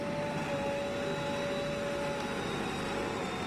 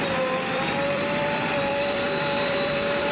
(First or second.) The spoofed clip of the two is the second